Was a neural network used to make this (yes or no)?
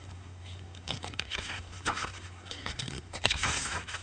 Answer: yes